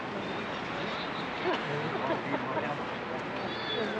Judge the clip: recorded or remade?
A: recorded